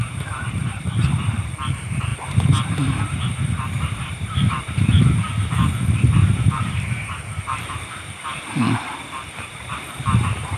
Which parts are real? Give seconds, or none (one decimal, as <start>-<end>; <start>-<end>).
none